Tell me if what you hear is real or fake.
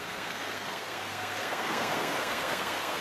fake